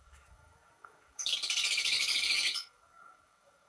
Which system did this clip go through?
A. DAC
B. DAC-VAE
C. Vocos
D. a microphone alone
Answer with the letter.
A